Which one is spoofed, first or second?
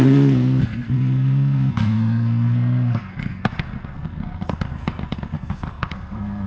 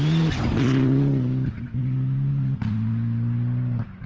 first